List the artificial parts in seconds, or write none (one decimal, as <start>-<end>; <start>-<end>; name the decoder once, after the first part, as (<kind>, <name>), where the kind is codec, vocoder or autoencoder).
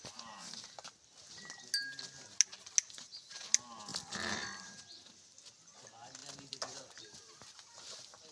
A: none